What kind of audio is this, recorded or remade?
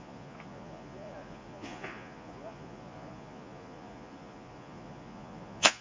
remade